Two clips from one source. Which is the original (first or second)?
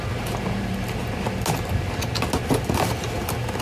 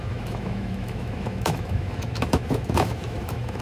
first